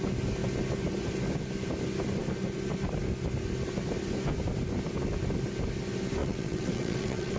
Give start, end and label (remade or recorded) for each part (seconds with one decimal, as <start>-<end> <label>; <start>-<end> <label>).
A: 0.0-6.2 recorded; 6.2-7.4 remade